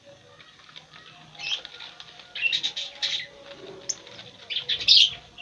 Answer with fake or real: real